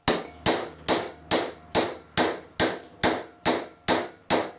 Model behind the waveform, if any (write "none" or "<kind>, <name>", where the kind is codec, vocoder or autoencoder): none